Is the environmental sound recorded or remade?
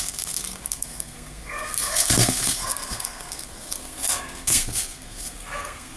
remade